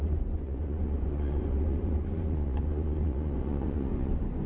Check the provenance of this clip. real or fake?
fake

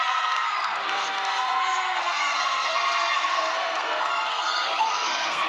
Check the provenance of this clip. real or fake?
fake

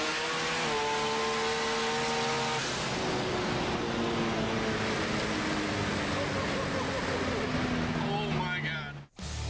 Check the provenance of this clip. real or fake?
real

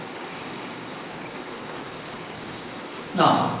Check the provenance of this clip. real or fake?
fake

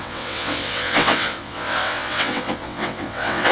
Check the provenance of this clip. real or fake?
fake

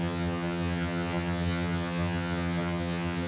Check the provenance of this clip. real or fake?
fake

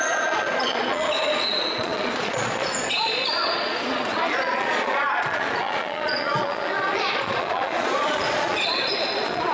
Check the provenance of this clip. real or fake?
fake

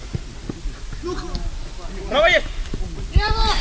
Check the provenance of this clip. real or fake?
real